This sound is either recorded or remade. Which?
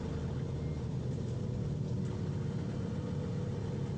recorded